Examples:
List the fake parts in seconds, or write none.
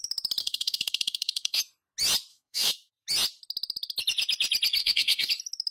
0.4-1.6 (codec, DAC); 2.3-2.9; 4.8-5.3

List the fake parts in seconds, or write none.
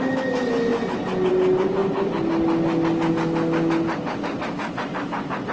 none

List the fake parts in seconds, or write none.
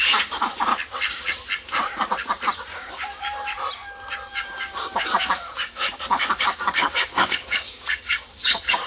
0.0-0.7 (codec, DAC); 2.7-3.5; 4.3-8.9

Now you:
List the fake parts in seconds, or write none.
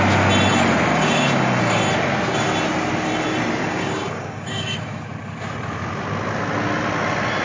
0.9-1.8 (codec, DAC); 3.6-5.0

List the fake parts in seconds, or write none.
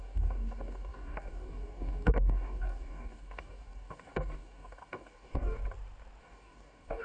0.0-5.6 (codec, DAC); 6.2-7.0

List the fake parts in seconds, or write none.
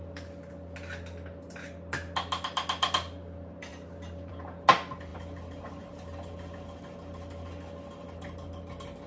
none